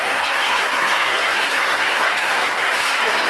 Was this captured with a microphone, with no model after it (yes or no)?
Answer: no